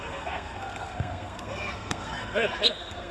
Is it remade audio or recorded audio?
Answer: remade